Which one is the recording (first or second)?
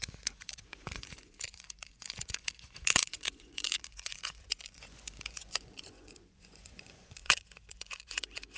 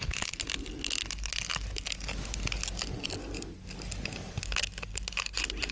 second